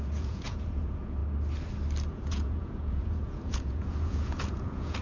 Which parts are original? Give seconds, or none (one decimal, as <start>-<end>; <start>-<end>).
1.2-2.1